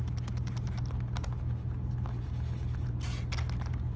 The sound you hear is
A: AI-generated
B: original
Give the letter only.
B